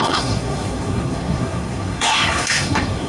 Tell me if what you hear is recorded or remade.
remade